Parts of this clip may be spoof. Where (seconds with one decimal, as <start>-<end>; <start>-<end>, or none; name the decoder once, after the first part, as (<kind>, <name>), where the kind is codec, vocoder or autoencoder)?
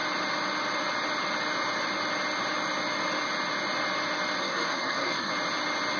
4.4-5.3 (codec, SNAC)